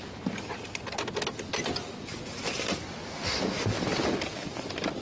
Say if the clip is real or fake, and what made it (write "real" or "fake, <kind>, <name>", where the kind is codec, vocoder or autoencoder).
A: real